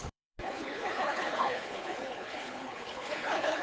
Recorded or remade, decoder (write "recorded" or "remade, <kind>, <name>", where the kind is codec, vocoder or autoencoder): remade, codec, HILCodec